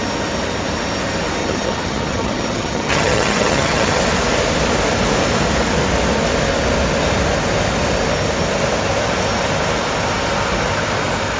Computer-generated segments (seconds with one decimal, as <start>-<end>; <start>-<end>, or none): 1.4-4.0